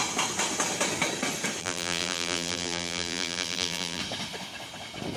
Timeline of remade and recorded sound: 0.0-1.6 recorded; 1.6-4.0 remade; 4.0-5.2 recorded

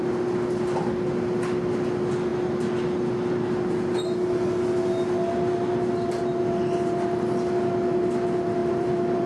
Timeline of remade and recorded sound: 0.0-8.6 recorded; 8.6-9.3 remade